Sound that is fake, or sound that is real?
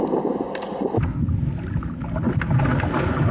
real